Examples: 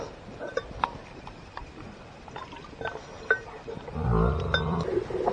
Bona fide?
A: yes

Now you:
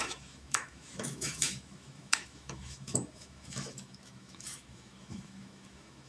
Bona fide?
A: no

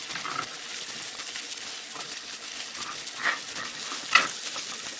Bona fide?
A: yes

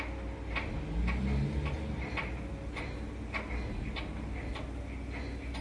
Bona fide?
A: yes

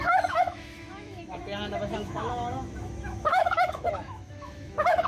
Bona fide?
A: no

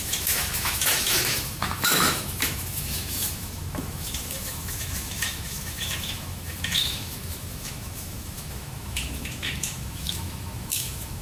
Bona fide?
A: no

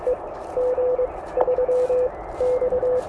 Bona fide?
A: yes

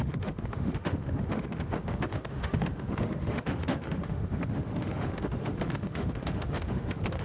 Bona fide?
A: no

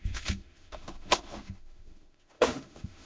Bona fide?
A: no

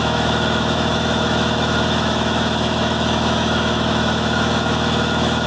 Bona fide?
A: no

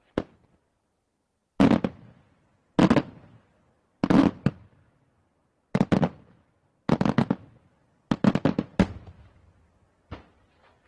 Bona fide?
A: yes